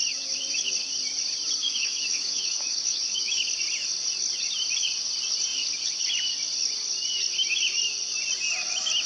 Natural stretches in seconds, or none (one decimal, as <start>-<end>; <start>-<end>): 0.0-1.6; 3.3-9.1